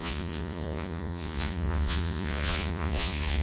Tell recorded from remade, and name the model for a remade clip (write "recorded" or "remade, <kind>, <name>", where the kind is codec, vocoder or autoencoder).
remade, vocoder, Vocos